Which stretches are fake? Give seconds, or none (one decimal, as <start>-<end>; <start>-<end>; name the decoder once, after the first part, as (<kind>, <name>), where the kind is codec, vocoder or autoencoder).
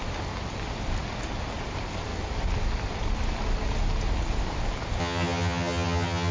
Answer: 5.0-6.3 (vocoder, HiFi-GAN)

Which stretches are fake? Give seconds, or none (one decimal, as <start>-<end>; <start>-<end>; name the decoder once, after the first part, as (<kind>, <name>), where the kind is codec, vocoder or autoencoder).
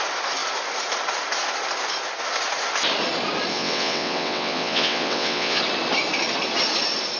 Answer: 3.5-5.6 (vocoder, WaveNeXt)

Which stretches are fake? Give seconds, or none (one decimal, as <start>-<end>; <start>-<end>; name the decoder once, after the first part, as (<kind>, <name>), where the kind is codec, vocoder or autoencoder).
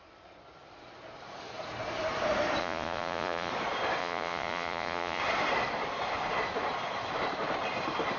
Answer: 2.6-3.5 (vocoder, Vocos); 4.0-5.2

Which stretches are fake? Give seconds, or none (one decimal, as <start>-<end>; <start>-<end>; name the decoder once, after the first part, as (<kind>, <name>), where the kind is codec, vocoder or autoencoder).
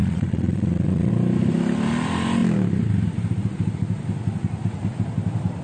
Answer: 0.0-1.1 (vocoder, Vocos)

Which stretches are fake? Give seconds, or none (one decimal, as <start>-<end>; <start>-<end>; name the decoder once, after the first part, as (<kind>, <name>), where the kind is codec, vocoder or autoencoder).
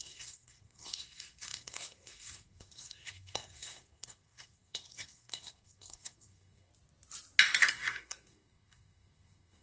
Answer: 0.0-6.7 (codec, SNAC); 7.7-9.6